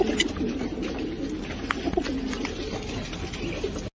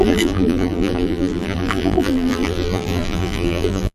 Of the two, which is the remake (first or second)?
second